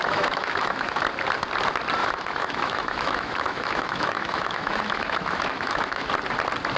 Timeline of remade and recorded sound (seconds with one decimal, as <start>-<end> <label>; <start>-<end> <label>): 0.0-1.0 remade; 1.0-2.0 recorded; 2.0-6.1 remade; 6.1-6.8 recorded